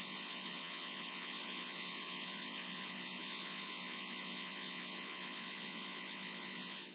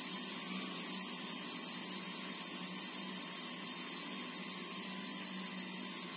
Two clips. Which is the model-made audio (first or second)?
first